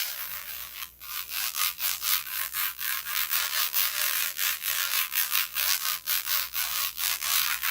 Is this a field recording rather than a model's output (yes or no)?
no